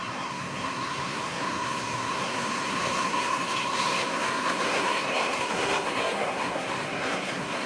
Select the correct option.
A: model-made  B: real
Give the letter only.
A